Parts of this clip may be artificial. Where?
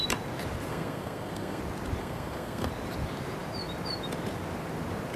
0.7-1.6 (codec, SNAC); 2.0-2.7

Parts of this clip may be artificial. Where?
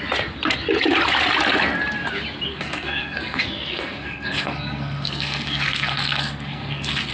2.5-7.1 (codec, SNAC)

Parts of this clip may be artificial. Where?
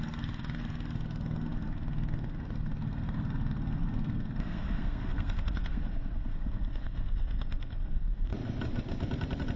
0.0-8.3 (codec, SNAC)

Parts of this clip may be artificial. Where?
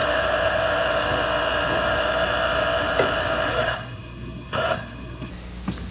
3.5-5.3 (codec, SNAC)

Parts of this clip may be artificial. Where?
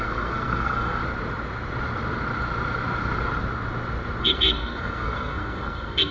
0.0-1.0 (codec, SNAC); 4.2-6.1